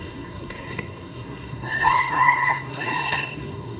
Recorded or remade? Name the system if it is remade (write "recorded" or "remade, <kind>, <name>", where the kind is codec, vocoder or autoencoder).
remade, codec, SNAC